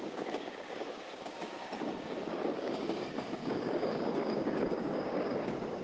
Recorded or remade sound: remade